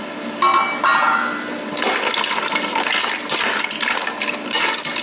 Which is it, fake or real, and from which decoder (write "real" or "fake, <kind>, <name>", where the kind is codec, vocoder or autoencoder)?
real